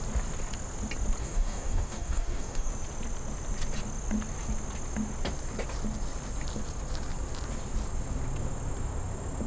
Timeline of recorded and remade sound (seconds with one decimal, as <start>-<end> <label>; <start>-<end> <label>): 0.0-1.2 recorded; 1.2-2.7 remade; 2.7-9.5 recorded